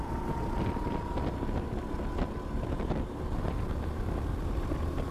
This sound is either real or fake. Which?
real